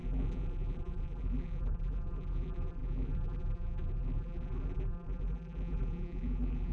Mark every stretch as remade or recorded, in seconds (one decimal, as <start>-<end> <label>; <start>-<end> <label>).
0.0-6.7 remade